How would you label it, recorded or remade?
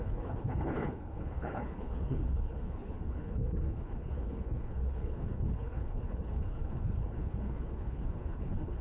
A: remade